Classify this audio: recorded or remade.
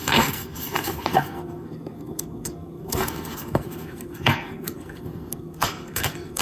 remade